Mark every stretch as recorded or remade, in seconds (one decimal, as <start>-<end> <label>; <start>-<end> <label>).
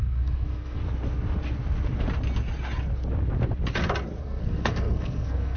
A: 0.0-0.8 remade; 0.8-4.2 recorded; 4.2-5.6 remade